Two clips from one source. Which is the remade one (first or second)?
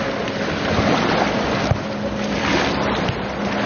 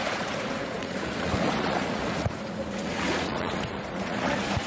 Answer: second